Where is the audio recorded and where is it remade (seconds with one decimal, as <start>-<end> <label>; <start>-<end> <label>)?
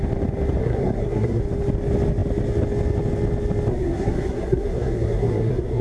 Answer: 0.0-0.6 recorded; 0.6-1.4 remade; 1.4-3.7 recorded; 3.7-5.8 remade